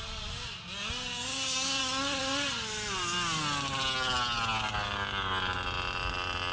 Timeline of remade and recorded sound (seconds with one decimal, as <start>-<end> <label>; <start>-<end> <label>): 0.0-1.3 recorded; 1.3-1.8 remade; 1.8-6.5 recorded